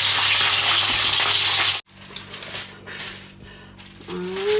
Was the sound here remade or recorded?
recorded